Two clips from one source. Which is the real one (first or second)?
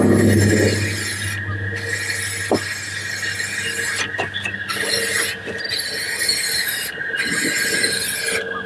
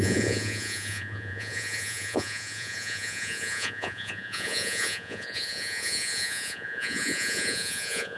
first